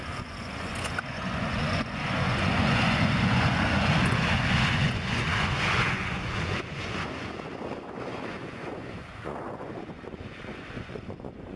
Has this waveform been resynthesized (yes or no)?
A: yes